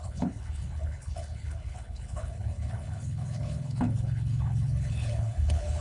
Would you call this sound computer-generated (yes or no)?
yes